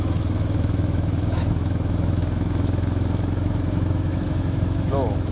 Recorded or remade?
remade